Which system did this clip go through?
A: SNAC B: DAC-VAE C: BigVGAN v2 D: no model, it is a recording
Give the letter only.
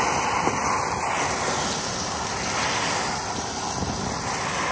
D